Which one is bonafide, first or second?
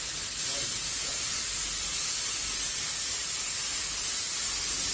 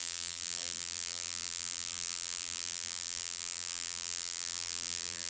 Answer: first